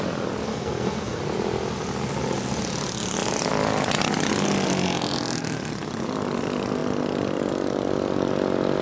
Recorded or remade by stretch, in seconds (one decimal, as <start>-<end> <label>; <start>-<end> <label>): 0.0-0.5 recorded; 0.5-1.2 remade; 1.2-8.8 recorded